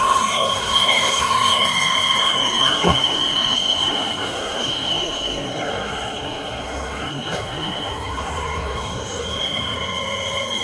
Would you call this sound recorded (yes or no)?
no